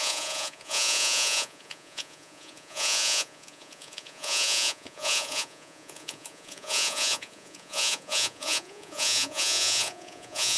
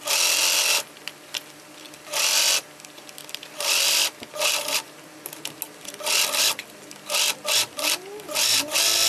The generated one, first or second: first